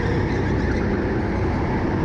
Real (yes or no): yes